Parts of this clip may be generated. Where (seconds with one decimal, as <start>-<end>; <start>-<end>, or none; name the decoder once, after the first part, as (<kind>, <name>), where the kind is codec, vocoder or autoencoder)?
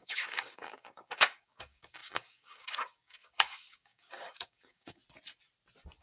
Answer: 0.0-5.0 (codec, DAC)